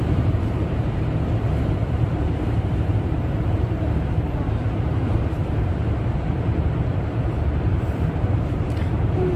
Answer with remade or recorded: remade